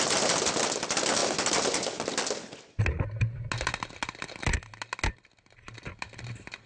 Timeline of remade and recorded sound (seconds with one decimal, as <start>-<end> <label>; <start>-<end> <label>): 0.0-6.7 recorded